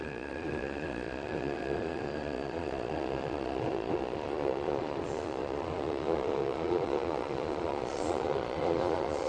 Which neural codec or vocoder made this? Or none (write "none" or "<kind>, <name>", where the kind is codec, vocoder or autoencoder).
vocoder, Vocos